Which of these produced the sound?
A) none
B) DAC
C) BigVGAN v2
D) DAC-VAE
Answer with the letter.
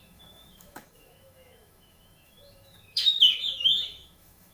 D